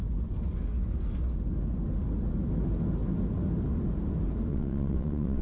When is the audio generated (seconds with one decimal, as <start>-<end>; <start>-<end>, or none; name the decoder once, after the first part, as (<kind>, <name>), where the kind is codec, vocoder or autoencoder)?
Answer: 4.5-5.4 (vocoder, WaveNeXt)